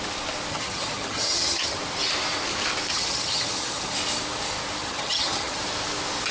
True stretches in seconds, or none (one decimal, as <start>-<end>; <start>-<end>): 0.0-0.5; 1.8-2.9; 3.9-4.8; 5.6-6.3